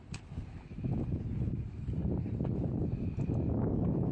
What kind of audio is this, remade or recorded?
recorded